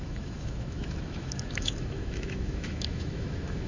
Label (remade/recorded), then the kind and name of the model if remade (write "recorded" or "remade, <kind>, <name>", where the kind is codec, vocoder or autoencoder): remade, autoencoder, DAC-VAE